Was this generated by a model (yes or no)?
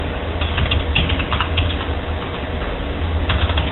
no